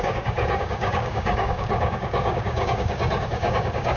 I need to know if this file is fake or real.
fake